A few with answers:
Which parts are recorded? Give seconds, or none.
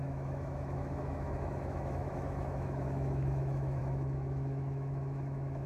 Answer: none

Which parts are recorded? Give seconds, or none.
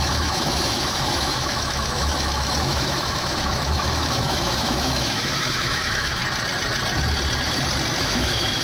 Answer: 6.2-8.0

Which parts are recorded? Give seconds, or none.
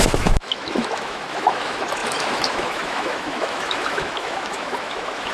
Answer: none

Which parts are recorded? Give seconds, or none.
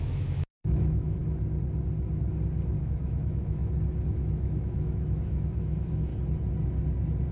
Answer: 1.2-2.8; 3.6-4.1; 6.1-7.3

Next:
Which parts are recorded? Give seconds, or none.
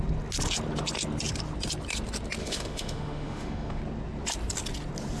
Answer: 0.0-2.4; 3.8-5.2